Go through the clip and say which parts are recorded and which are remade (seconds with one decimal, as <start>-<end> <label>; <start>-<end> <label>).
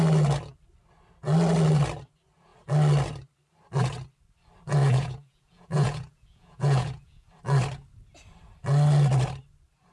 0.0-4.8 recorded; 4.8-7.3 remade; 7.3-9.9 recorded